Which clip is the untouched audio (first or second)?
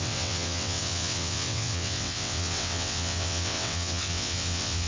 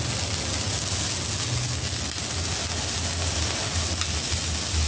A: second